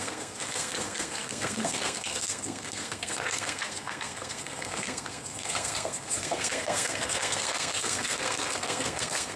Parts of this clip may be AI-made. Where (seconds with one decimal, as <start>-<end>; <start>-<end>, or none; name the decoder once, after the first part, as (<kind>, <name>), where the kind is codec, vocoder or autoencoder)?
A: 0.0-9.4 (codec, SNAC)